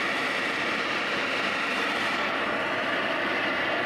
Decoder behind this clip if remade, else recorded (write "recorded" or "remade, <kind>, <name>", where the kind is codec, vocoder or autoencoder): remade, vocoder, BigVGAN v2